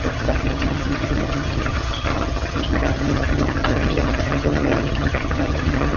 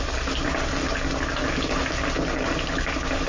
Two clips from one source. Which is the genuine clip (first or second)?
second